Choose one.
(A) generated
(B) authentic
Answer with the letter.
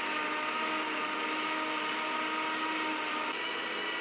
B